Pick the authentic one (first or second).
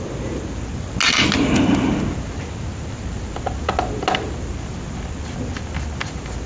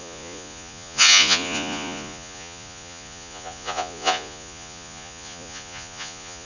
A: first